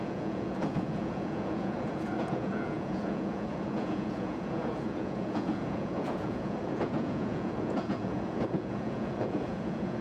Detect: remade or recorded remade